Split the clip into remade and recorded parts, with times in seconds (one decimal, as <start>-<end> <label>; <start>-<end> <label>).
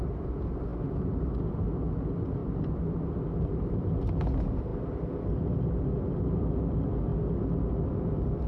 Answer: 0.0-8.5 recorded